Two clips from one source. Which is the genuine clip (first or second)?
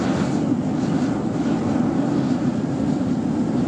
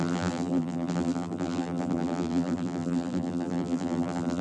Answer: first